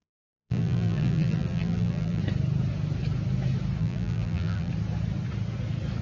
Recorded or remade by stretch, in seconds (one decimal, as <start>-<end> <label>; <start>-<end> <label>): 0.0-2.2 remade; 2.2-3.8 recorded; 3.8-4.7 remade; 4.7-6.0 recorded